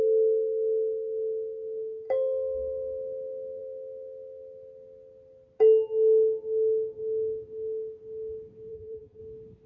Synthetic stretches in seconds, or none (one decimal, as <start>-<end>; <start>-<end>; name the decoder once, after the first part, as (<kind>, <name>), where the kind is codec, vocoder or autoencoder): 8.7-9.2 (vocoder, Vocos)

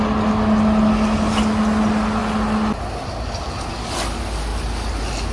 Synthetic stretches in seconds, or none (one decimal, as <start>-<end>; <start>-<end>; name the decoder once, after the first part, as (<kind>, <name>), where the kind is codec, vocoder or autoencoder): none

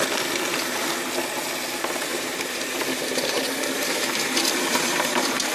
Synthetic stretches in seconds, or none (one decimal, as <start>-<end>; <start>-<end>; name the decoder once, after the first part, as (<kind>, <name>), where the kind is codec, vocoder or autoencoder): 2.1-5.5 (vocoder, BigVGAN v2)

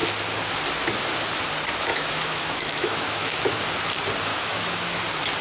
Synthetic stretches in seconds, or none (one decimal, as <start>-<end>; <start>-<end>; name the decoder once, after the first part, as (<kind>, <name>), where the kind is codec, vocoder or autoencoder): 1.9-3.6 (autoencoder, DAC-VAE); 4.3-5.0

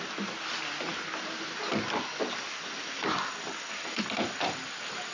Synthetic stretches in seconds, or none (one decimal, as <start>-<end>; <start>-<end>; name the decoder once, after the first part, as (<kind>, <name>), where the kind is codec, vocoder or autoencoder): none

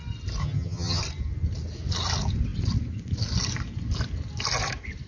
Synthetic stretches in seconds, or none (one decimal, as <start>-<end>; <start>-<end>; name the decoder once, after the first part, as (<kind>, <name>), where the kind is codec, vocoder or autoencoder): 0.4-1.0 (vocoder, HiFi-GAN)